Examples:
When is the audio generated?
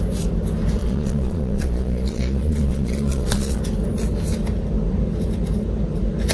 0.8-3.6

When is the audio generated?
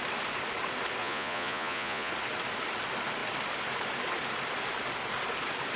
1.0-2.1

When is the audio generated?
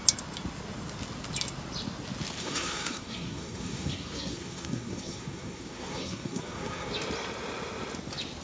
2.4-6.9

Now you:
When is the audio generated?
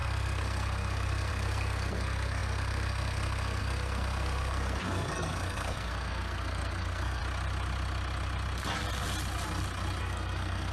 0.0-7.2; 10.0-10.7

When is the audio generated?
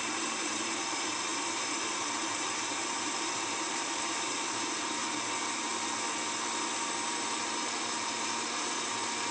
0.0-5.0; 6.8-9.3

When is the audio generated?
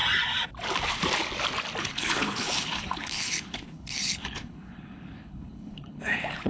1.8-6.5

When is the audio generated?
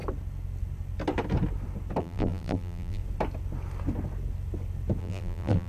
2.0-3.0; 5.0-5.7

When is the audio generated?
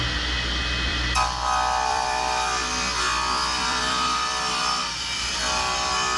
0.9-4.6